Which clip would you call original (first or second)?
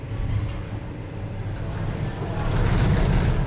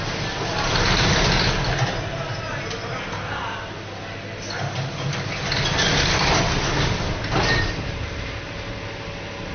second